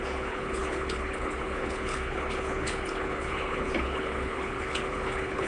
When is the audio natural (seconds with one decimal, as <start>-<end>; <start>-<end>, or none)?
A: none